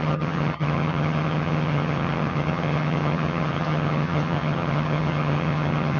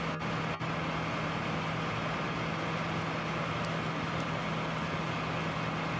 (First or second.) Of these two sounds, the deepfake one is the first